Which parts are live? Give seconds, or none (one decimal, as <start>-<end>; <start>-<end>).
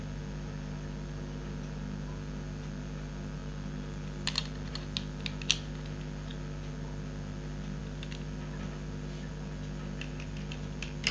0.0-11.1